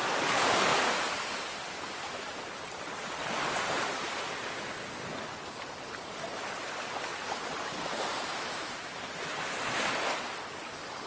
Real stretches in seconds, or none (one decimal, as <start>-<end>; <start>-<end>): 0.0-7.1; 10.3-11.1